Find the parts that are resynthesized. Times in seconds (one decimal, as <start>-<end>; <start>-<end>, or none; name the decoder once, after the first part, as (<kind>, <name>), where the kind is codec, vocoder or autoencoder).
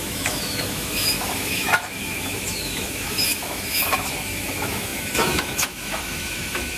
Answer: 0.0-6.8 (autoencoder, DAC-VAE)